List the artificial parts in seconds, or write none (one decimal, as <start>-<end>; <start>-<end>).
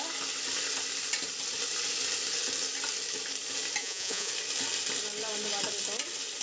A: 3.8-4.3